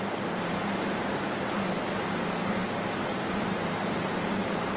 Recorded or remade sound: remade